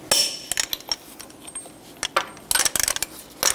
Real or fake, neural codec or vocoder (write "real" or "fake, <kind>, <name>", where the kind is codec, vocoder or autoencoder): real